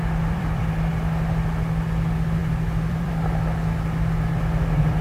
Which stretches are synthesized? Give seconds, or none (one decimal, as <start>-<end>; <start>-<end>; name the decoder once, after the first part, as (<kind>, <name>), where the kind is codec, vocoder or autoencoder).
0.0-0.6 (vocoder, BigVGAN v2); 2.4-3.1